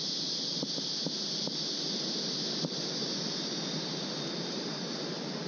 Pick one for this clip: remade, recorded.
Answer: recorded